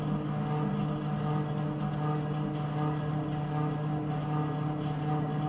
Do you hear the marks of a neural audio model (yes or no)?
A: no